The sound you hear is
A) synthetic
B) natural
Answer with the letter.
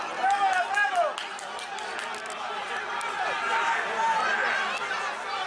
B